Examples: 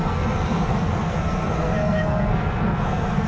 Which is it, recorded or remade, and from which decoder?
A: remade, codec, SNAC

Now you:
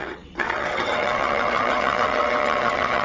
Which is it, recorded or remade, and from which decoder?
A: remade, vocoder, WaveNeXt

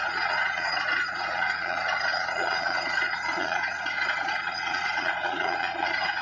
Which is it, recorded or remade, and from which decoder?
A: remade, vocoder, Vocos